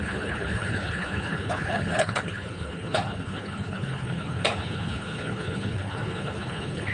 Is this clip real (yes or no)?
no